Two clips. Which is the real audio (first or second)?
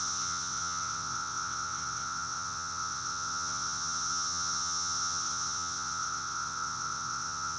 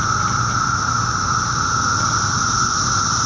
second